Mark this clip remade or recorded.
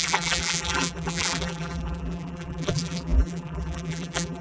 remade